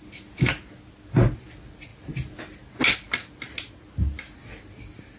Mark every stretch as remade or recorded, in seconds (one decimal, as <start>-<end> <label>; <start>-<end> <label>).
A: 0.0-5.2 recorded

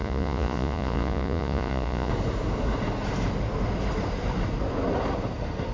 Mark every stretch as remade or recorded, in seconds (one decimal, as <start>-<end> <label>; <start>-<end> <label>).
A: 0.0-2.1 remade; 2.1-5.7 recorded

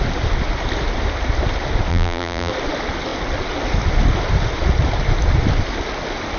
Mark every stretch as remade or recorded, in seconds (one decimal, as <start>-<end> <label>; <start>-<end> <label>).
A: 0.0-1.9 recorded; 1.9-2.5 remade; 2.5-6.4 recorded

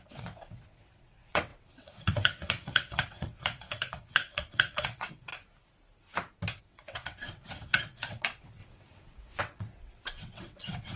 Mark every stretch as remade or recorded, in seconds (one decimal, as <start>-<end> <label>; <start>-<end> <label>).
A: 0.0-5.3 remade; 5.3-6.6 recorded; 6.6-11.0 remade

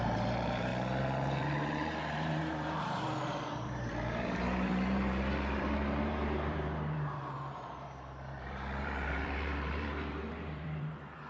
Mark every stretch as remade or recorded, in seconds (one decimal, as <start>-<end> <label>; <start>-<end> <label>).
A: 0.0-0.7 remade; 0.7-1.3 recorded; 1.3-11.3 remade